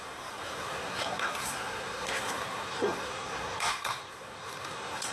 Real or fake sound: fake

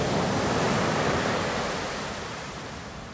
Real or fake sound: real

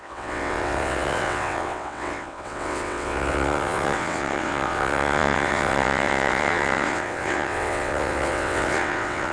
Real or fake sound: fake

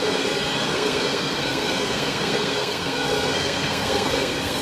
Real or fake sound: fake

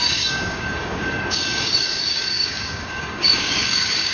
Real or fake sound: fake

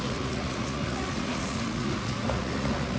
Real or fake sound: fake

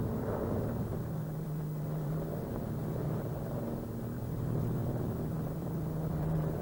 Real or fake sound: fake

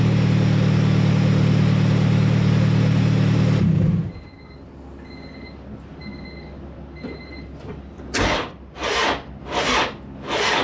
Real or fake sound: real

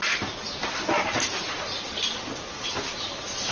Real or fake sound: real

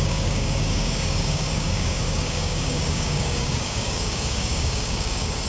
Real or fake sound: fake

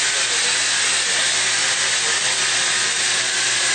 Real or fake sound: real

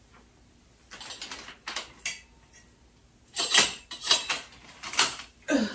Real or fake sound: real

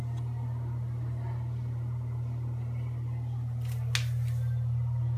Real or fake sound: real